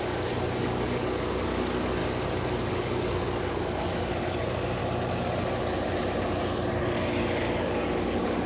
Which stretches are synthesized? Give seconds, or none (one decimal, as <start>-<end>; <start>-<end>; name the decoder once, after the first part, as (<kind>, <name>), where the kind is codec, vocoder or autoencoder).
0.0-2.0 (codec, DAC); 2.7-4.8; 6.8-8.5